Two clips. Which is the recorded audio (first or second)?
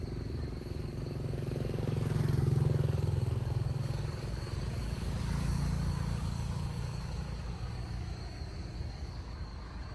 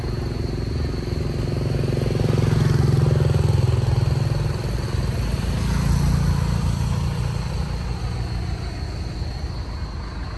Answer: second